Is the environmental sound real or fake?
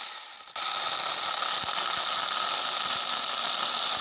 real